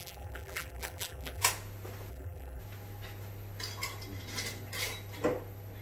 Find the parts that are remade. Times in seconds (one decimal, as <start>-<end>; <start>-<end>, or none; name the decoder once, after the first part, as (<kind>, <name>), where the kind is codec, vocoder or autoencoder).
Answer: 0.0-1.4 (vocoder, BigVGAN v2); 2.1-2.6